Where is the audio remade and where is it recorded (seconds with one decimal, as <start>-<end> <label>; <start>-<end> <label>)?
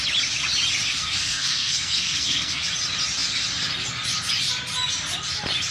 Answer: 0.0-0.9 recorded; 0.9-2.6 remade; 2.6-5.7 recorded